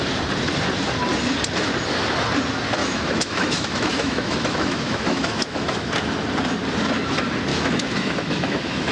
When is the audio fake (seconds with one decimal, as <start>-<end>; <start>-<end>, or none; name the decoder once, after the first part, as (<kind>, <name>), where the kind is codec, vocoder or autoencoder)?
2.8-5.9 (autoencoder, DAC-VAE); 7.5-8.9